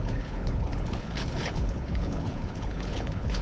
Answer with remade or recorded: remade